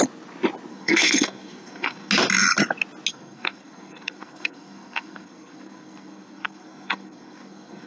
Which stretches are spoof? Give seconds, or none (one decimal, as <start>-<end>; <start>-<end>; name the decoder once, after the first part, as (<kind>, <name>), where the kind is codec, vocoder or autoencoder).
0.7-2.1 (codec, SNAC); 3.1-7.9